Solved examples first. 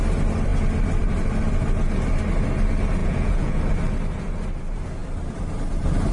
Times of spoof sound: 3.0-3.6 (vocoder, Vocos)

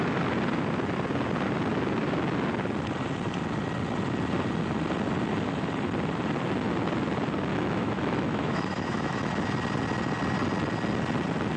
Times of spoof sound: 7.5-9.3 (autoencoder, DAC-VAE)